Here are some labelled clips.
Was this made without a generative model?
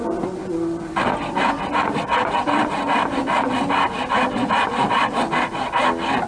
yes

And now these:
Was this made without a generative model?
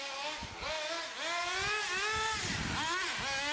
yes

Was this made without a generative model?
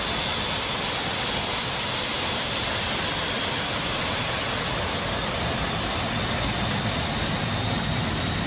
yes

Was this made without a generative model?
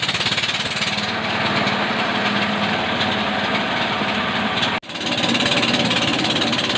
yes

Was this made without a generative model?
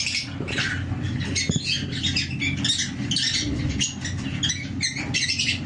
yes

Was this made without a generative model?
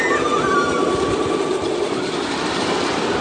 yes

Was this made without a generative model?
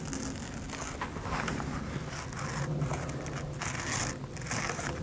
yes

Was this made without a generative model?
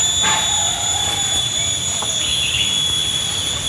yes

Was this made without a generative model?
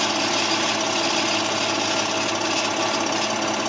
yes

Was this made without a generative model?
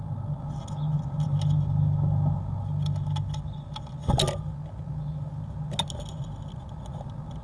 yes